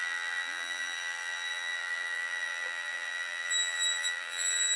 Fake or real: fake